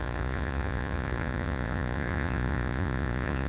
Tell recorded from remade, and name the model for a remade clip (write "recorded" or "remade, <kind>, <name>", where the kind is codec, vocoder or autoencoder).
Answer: remade, vocoder, Vocos